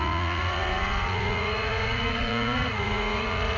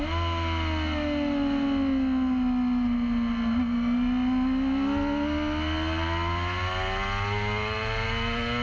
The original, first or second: second